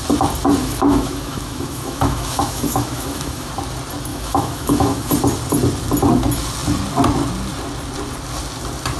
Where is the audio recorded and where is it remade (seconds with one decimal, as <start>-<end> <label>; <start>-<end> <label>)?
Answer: 0.0-0.6 recorded; 0.6-3.5 remade; 3.5-4.1 recorded; 4.1-5.1 remade; 5.1-9.0 recorded